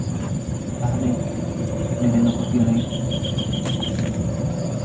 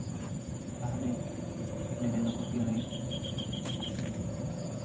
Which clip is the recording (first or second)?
first